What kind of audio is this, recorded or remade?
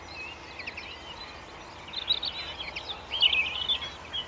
recorded